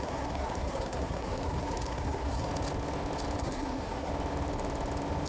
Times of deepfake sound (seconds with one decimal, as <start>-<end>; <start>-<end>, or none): 0.0-2.5; 3.4-4.1